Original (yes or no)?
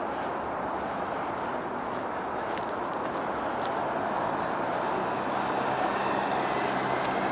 yes